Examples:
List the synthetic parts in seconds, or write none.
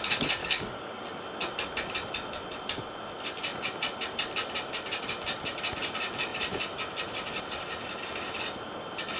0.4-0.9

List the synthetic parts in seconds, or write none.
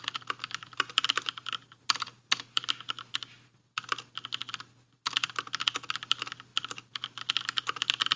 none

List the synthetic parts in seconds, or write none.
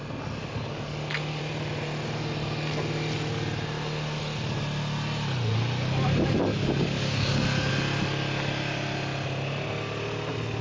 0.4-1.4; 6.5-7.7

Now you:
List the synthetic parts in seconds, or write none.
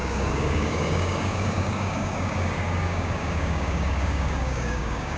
0.0-5.2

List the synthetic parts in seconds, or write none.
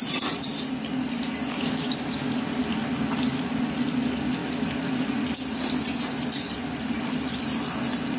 1.5-2.4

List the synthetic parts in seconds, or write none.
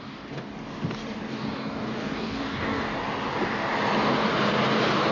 0.0-0.5; 1.3-2.9